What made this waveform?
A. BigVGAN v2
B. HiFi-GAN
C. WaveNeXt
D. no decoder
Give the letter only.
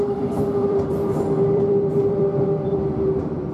A